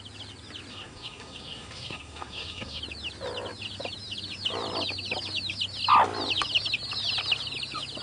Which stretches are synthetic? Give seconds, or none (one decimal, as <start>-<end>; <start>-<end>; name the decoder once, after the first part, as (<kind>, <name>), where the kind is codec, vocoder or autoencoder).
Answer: 0.7-2.8 (codec, SNAC)